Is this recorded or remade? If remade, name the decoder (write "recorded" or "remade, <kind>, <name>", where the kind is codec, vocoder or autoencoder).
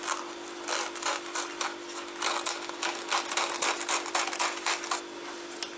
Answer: recorded